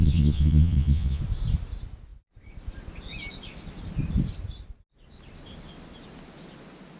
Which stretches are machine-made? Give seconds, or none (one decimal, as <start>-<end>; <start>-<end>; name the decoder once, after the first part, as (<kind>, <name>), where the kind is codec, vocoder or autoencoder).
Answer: 0.0-1.2 (vocoder, Vocos)